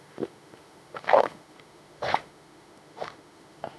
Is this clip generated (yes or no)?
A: yes